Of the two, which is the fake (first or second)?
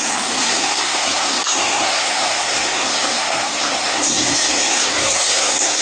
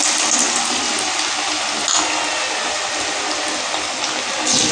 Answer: first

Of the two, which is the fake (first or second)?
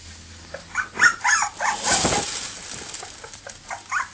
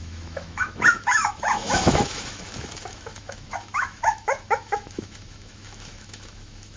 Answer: second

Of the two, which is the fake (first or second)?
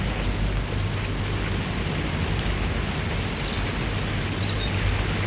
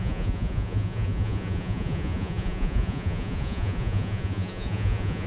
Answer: second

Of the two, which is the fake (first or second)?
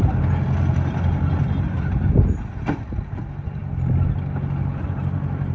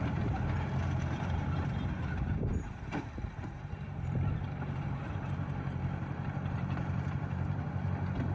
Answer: second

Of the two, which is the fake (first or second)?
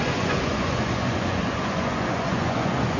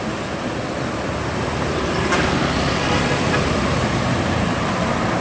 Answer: first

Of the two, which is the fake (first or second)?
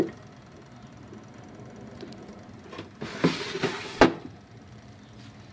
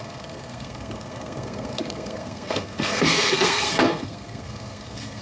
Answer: second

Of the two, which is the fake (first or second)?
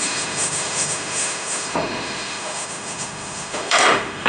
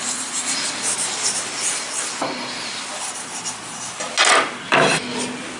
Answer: first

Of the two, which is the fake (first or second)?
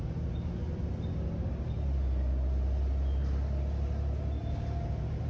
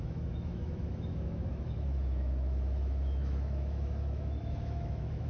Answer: second